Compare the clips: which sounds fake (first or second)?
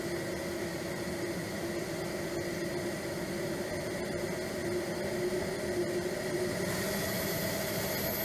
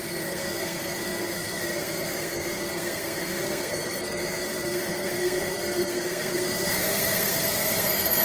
second